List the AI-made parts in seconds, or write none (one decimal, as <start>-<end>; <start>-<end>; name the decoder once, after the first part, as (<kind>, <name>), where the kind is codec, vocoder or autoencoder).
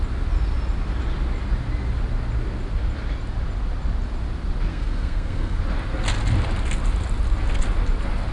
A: 4.7-5.6 (codec, SNAC)